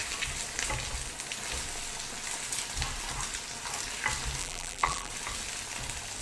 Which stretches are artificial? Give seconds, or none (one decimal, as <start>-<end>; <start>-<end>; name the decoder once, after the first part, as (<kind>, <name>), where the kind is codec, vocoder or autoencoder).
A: 4.4-5.1 (vocoder, BigVGAN v2)